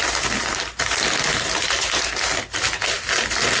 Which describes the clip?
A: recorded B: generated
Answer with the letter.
A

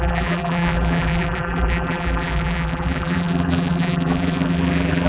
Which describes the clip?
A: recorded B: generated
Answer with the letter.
B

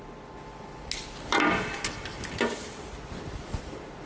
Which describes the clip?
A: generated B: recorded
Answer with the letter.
B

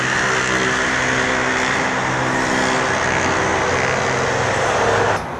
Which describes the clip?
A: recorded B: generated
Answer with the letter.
A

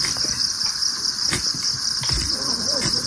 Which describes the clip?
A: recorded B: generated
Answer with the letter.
B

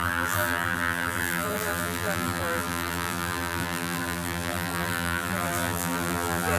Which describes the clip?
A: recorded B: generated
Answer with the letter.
B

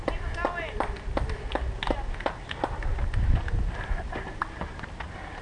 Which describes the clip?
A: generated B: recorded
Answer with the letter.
B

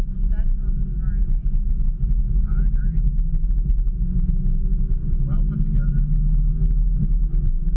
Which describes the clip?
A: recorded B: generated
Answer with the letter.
A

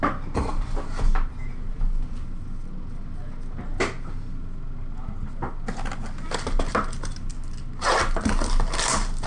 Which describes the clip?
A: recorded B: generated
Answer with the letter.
A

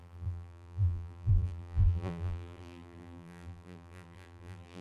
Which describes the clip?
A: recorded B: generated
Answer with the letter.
B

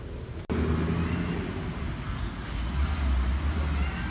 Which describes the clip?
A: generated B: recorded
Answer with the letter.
B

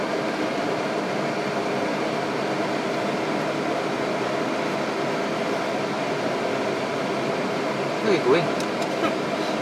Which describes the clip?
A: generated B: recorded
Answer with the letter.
B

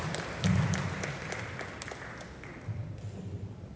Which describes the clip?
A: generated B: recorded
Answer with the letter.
B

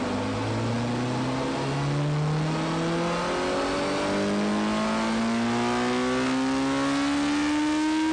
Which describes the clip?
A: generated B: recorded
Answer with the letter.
B